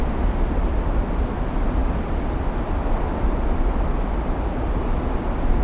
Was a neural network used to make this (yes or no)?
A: no